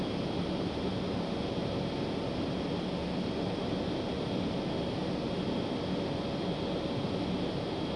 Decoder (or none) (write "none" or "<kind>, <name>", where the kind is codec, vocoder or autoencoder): none